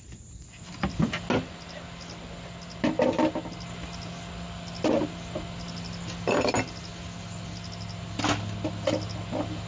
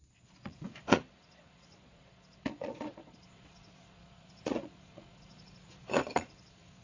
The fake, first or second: second